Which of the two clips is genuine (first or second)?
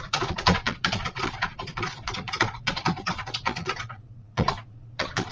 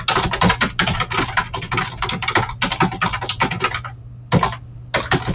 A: second